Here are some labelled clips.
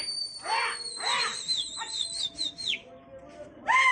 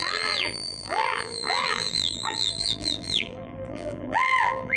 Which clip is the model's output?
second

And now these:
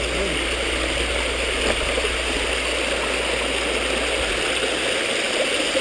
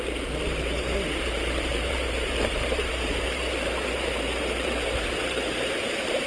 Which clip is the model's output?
second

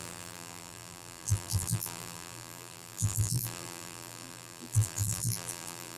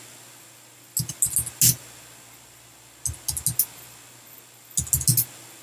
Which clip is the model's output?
first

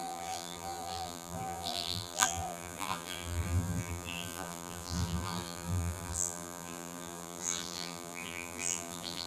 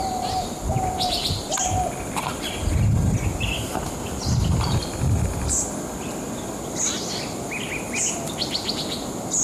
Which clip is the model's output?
first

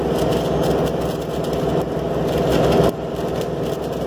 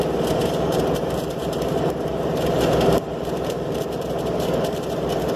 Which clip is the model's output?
second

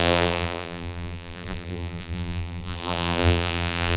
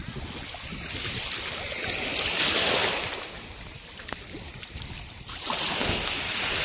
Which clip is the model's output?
first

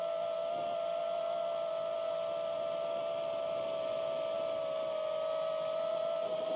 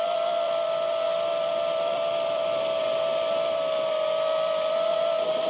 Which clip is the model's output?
second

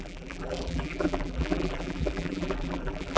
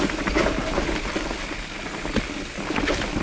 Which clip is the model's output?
first